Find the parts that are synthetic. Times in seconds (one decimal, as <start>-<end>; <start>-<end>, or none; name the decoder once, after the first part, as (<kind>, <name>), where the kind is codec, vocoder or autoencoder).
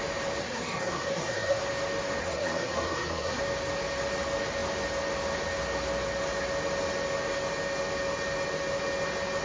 0.4-1.6 (codec, SNAC); 2.2-3.4